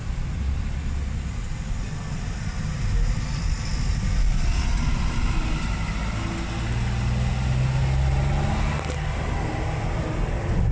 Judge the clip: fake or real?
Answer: real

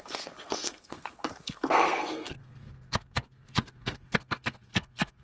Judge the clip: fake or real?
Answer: fake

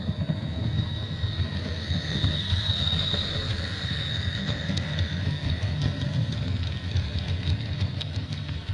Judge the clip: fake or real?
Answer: fake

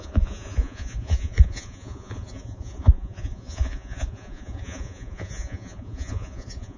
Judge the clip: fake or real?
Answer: fake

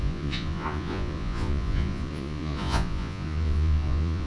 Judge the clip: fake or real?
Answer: fake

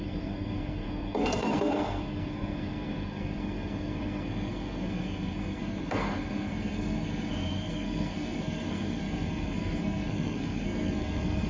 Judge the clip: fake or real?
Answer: fake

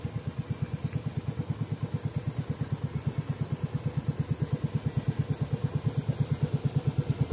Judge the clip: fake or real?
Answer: real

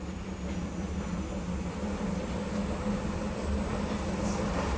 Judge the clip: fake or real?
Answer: real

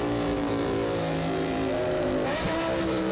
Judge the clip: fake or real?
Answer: fake